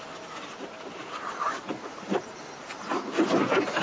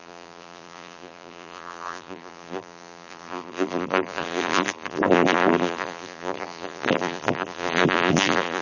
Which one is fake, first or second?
second